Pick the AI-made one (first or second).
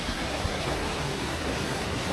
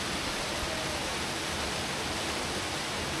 first